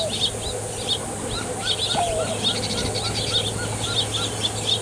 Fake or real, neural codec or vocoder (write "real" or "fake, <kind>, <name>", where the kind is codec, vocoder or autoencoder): real